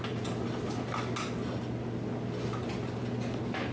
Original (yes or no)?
yes